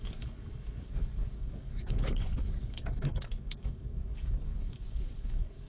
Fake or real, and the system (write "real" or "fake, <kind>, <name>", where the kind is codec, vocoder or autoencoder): fake, codec, DAC